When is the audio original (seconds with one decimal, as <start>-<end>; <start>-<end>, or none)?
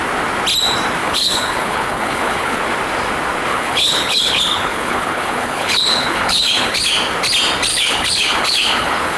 0.0-1.0; 2.6-3.5; 6.9-7.7